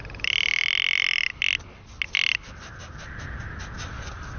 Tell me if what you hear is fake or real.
real